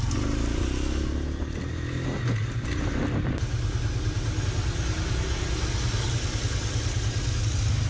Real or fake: real